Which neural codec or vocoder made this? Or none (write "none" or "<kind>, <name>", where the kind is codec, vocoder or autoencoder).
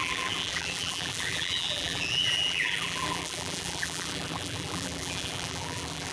vocoder, BigVGAN v2